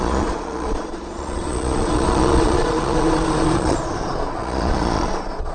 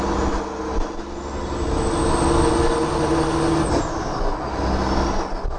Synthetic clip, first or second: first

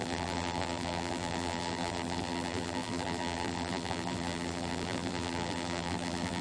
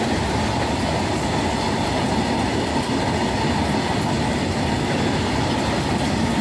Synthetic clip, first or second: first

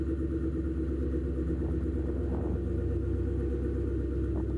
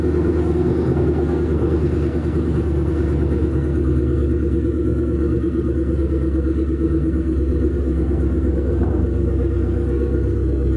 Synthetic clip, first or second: second